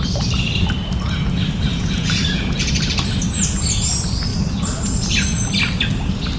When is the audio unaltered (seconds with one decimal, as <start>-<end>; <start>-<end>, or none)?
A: 0.0-1.7; 2.7-6.4